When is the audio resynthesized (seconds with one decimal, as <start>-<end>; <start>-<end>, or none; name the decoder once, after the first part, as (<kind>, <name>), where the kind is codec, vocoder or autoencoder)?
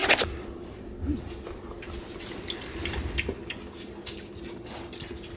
none